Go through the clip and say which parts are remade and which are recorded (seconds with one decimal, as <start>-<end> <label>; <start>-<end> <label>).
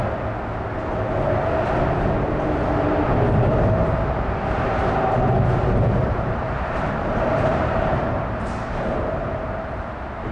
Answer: 0.0-6.0 recorded; 6.0-9.8 remade; 9.8-10.3 recorded